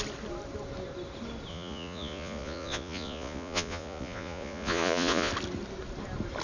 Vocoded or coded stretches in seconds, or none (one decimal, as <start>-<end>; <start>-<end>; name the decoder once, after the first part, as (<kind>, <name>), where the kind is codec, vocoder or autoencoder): 1.5-5.3 (vocoder, Vocos)